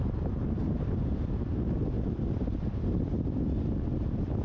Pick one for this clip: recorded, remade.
recorded